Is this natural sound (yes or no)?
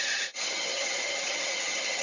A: no